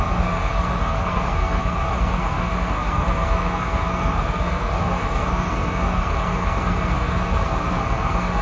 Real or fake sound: fake